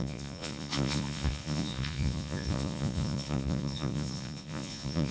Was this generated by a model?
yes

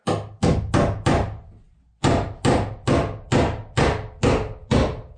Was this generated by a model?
no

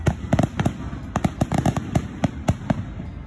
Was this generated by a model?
no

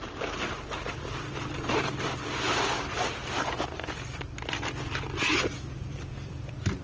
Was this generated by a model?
yes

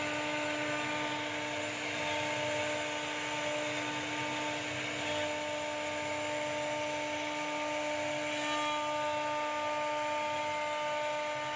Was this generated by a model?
no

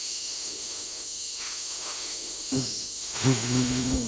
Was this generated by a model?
yes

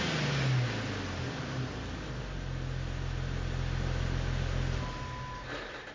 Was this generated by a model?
no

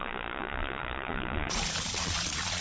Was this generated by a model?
yes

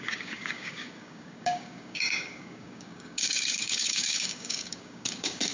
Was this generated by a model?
yes